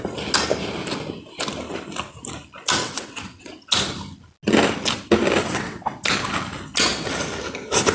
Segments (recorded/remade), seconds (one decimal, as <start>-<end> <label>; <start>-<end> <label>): 0.0-2.8 recorded; 2.8-3.5 remade; 3.5-5.4 recorded; 5.4-6.0 remade; 6.0-7.9 recorded